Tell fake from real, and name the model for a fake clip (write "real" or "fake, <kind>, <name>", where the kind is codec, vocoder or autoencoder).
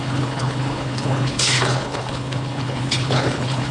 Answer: fake, codec, HILCodec